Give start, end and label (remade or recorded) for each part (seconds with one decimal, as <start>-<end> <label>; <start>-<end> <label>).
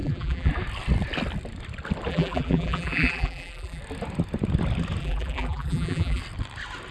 0.0-0.5 remade; 0.5-2.1 recorded; 2.1-3.8 remade; 3.8-5.0 recorded; 5.0-6.2 remade; 6.2-6.9 recorded